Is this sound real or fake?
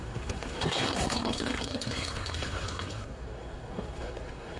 fake